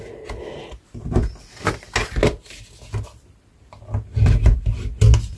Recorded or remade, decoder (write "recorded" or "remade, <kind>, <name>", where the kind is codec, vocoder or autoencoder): recorded